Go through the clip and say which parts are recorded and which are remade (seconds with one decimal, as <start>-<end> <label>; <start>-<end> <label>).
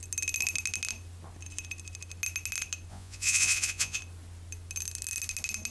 0.0-2.9 recorded; 2.9-4.0 remade; 4.0-5.7 recorded